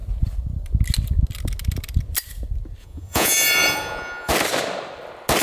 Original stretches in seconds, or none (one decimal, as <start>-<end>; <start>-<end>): 0.0-2.8; 4.3-5.4